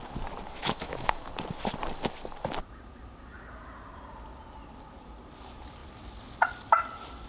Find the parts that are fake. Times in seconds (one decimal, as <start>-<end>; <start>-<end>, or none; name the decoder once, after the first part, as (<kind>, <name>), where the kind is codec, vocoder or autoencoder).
0.6-1.3 (autoencoder, DAC-VAE)